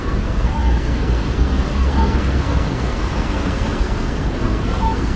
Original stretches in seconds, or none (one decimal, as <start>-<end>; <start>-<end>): none